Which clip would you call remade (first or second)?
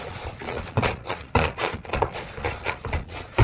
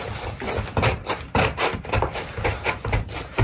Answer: first